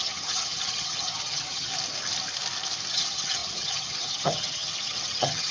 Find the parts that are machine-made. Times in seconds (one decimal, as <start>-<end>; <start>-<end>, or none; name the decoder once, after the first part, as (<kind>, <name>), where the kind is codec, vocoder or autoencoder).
0.0-1.7 (vocoder, HiFi-GAN); 2.9-5.5